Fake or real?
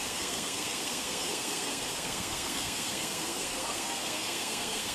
fake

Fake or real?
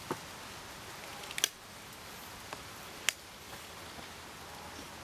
real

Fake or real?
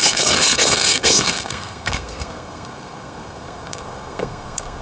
fake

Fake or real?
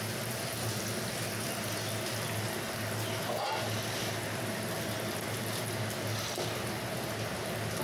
real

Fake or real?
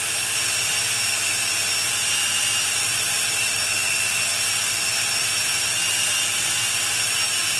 real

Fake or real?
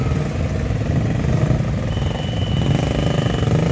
real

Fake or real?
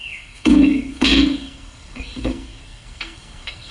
fake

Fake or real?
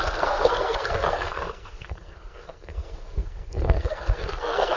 fake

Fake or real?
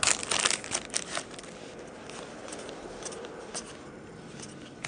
real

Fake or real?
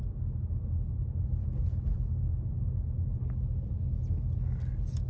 real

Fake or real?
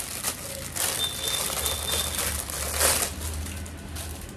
real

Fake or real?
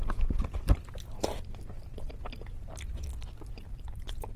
real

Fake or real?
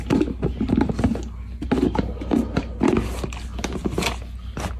real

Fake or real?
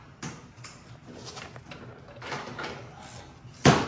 real